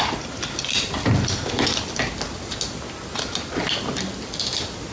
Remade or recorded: recorded